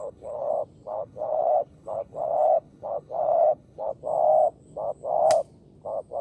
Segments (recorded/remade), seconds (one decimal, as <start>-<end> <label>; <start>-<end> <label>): 0.0-0.5 remade; 0.5-0.9 recorded; 0.9-3.9 remade; 3.9-6.2 recorded